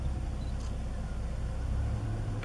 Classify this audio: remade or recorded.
recorded